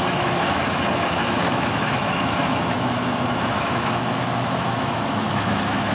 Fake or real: fake